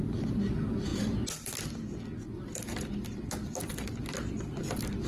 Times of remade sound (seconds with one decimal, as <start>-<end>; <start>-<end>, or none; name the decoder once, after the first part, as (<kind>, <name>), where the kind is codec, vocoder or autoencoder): none